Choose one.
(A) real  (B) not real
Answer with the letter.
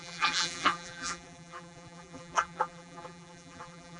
B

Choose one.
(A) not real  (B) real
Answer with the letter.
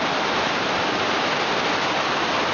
B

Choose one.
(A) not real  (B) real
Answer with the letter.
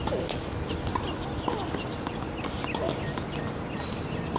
B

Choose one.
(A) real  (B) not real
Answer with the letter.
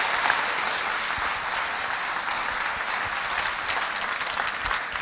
A